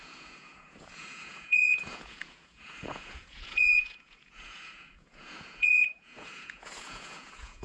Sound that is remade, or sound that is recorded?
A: remade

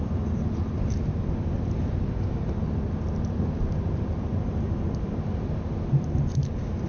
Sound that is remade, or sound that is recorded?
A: recorded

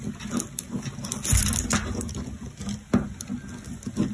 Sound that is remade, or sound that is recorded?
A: recorded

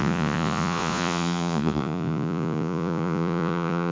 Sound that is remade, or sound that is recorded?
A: remade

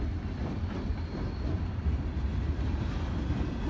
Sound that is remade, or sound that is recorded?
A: recorded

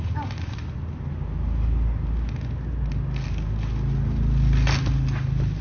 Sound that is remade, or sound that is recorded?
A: recorded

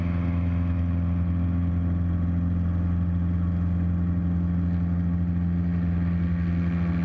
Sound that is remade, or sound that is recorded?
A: recorded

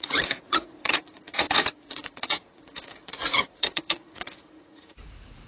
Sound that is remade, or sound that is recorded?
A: remade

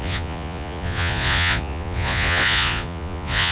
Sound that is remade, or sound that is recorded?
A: remade